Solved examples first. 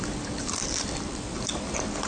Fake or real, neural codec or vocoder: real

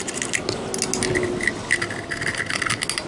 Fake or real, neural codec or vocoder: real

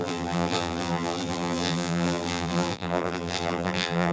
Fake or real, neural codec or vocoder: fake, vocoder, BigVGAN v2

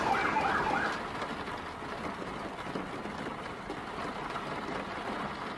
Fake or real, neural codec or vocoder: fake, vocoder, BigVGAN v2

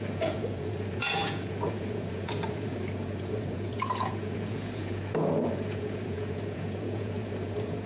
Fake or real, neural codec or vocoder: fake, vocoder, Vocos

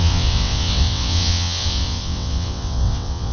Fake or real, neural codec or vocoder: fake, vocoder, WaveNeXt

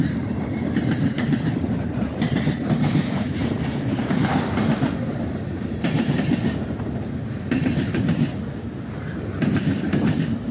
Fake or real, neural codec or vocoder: fake, vocoder, BigVGAN v2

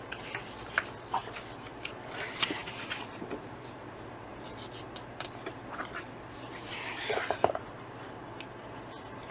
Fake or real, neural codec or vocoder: real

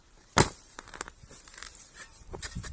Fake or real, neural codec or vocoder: real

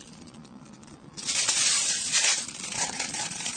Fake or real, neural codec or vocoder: fake, vocoder, Vocos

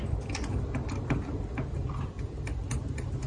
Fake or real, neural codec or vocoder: real